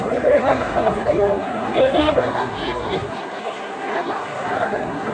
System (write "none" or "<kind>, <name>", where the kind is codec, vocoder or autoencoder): codec, SNAC